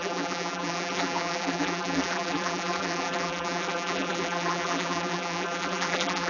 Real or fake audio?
fake